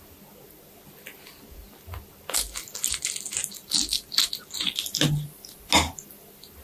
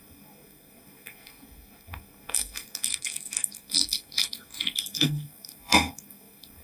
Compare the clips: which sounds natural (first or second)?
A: first